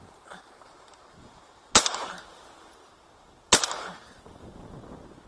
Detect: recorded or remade recorded